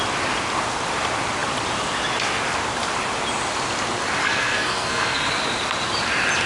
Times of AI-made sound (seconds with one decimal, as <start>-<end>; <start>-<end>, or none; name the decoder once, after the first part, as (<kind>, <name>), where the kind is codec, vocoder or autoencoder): 4.2-5.3 (codec, SNAC)